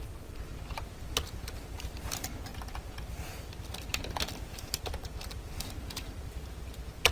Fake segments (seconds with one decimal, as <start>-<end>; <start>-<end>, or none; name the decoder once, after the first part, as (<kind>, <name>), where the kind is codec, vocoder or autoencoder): 0.0-7.1 (vocoder, BigVGAN v2)